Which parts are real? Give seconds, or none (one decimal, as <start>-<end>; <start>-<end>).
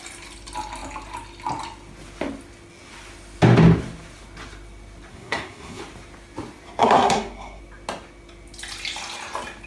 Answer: 0.0-5.1; 5.8-6.8; 7.6-9.7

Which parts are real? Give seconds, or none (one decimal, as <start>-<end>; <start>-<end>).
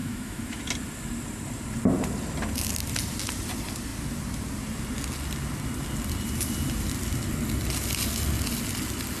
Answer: 0.6-9.2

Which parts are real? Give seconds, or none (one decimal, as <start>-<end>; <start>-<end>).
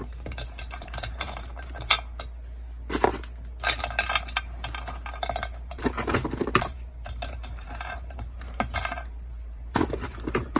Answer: 1.9-5.7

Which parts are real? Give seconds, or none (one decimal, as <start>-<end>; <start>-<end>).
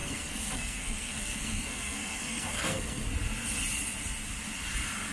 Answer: 3.1-5.1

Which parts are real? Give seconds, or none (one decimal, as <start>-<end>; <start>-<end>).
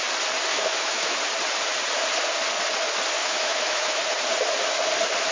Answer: 0.0-0.5; 1.2-3.2; 4.0-5.3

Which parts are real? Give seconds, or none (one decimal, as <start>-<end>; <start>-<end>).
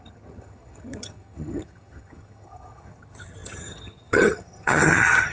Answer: none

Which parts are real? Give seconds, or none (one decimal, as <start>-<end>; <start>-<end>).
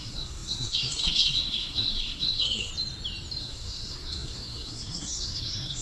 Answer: 2.7-3.4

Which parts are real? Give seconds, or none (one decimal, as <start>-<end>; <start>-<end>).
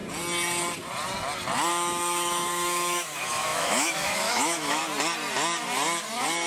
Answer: 0.0-1.7; 4.8-6.5